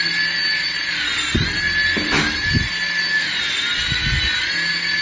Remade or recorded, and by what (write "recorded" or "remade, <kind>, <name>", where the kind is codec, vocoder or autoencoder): recorded